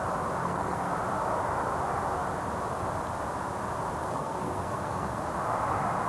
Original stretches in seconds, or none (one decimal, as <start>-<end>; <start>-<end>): 0.0-0.4; 0.9-4.0; 5.2-6.1